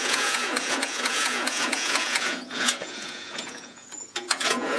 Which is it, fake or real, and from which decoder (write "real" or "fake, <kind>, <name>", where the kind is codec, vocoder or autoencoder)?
fake, vocoder, Vocos